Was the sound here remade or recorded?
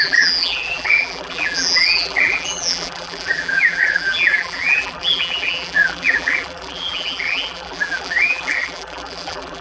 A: remade